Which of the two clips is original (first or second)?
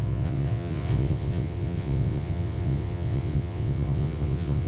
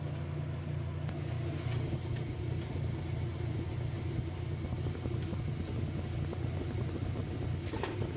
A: second